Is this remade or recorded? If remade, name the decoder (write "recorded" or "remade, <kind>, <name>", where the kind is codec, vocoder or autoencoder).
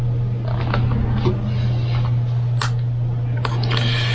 recorded